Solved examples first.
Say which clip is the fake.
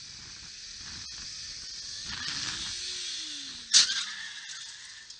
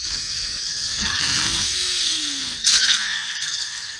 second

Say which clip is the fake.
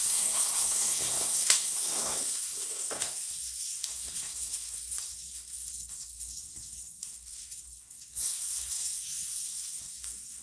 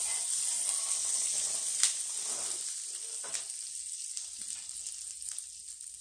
first